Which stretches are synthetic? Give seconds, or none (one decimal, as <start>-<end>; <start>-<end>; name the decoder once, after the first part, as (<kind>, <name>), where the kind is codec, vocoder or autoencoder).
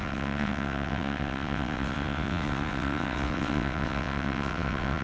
0.0-5.0 (vocoder, WaveNeXt)